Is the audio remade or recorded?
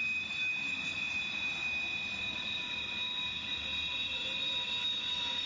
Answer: recorded